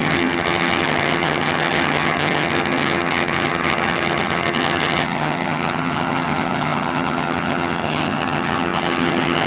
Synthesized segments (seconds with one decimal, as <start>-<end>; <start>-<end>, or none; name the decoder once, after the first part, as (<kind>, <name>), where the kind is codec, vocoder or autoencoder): 0.0-9.5 (vocoder, HiFi-GAN)